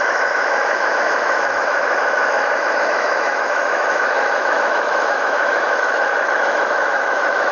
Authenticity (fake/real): fake